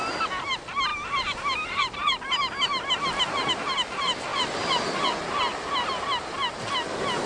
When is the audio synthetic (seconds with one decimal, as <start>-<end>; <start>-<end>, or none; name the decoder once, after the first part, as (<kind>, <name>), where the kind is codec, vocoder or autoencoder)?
none